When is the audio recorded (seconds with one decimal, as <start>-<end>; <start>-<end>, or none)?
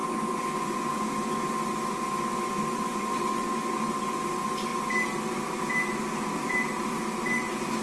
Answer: 0.0-7.8